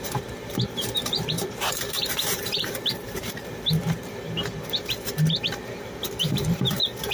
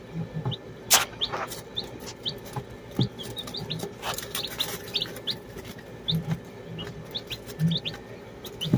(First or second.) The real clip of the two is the second